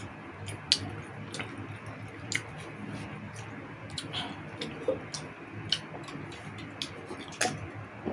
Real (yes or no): yes